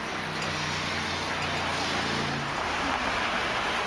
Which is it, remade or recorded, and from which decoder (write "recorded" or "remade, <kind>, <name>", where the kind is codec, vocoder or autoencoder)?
recorded